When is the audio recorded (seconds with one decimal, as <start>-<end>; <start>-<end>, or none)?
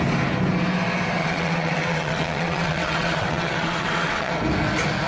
0.0-1.2; 4.3-5.1